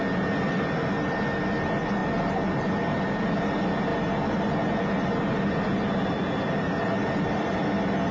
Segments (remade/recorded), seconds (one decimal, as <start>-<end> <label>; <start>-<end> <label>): 0.0-8.1 recorded